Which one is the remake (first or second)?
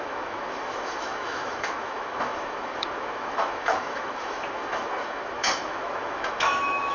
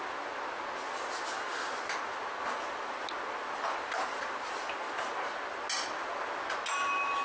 first